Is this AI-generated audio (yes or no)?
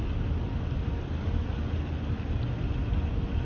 no